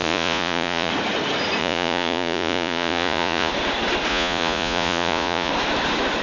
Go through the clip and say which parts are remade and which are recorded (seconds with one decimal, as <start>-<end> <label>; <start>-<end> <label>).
0.0-0.9 remade; 0.9-1.6 recorded; 1.6-3.5 remade; 3.5-4.1 recorded; 4.1-5.5 remade; 5.5-6.2 recorded